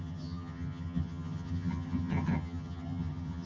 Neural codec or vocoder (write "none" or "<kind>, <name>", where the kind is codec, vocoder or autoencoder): vocoder, HiFi-GAN